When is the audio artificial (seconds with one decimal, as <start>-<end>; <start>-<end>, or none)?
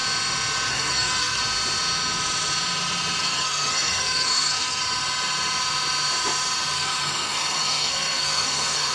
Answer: 0.7-1.4; 3.2-4.8; 6.7-8.9